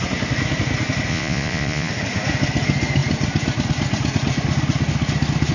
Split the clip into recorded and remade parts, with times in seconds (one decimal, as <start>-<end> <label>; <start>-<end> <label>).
0.0-1.1 recorded; 1.1-1.9 remade; 1.9-5.5 recorded